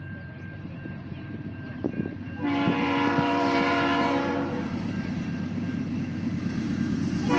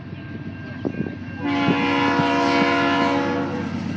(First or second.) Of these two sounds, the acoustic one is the second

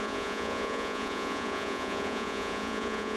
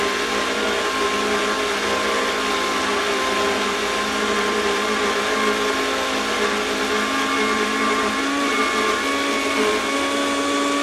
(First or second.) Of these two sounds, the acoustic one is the second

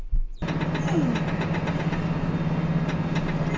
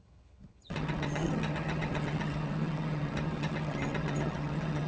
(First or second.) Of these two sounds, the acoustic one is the first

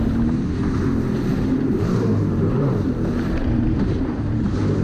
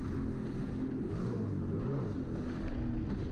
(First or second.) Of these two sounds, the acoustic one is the second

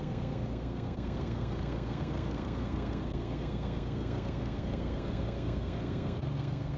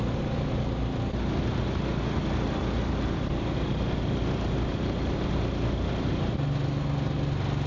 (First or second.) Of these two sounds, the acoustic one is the second